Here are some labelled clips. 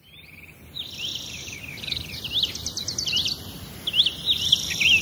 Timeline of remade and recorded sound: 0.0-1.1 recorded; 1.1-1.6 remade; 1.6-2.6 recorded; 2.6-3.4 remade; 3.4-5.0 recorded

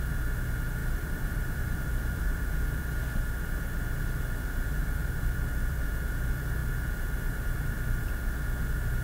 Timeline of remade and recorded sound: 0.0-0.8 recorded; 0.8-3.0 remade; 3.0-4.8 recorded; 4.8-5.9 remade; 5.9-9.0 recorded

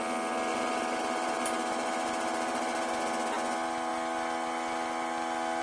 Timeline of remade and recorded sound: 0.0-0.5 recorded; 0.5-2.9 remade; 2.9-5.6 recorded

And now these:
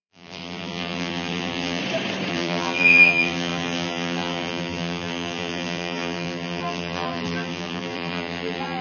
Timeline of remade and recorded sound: 0.0-1.8 remade; 1.8-2.3 recorded; 2.3-8.8 remade

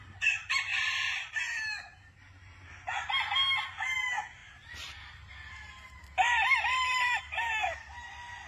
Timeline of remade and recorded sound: 0.0-0.7 recorded; 0.7-1.3 remade; 1.3-8.5 recorded

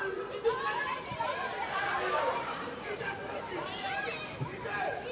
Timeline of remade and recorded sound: 0.0-1.1 recorded; 1.1-2.7 remade; 2.7-5.1 recorded

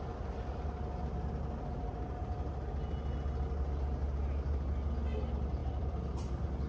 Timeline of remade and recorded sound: 0.0-5.6 recorded; 5.6-6.3 remade; 6.3-6.7 recorded